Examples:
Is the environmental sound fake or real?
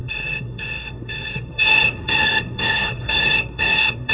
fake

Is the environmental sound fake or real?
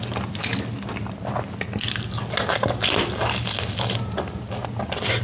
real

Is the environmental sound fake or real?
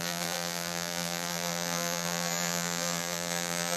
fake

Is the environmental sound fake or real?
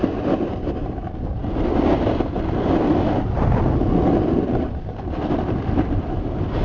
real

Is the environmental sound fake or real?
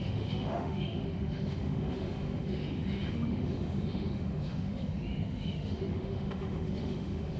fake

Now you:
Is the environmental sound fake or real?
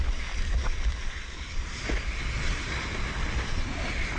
real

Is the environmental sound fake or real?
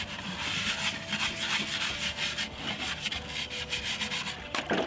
real